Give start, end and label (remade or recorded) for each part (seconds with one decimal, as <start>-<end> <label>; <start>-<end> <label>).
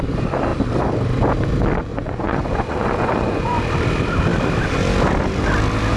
0.0-1.9 recorded; 1.9-3.6 remade; 3.6-6.0 recorded